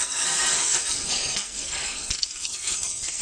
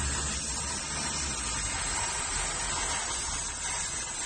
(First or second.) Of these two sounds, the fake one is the first